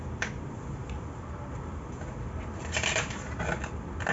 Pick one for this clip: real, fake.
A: real